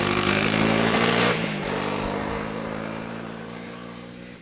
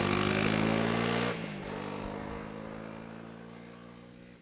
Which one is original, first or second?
second